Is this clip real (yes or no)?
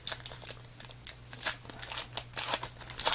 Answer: yes